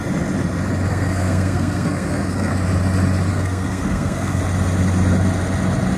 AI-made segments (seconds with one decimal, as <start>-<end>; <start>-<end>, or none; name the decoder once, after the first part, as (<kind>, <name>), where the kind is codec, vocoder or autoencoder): 0.9-2.5 (codec, SNAC); 3.3-4.4